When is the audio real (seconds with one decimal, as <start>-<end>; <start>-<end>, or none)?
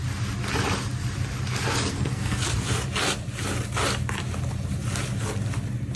0.0-1.9; 2.5-6.0